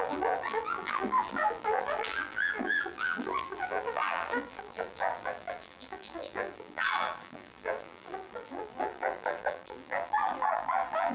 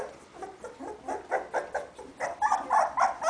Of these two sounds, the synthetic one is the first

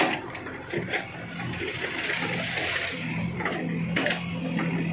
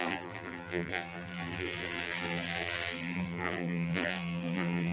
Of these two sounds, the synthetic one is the second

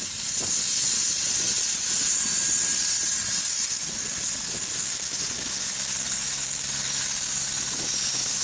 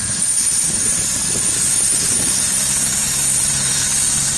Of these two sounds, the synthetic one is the second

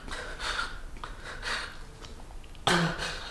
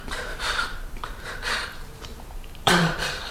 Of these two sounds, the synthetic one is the second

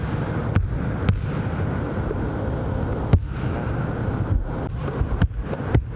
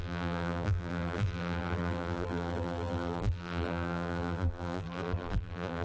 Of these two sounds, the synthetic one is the second